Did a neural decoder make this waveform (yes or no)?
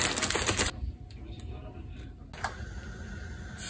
no